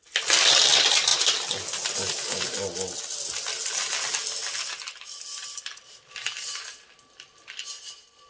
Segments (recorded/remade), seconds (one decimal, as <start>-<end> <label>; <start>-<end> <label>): 0.0-8.3 recorded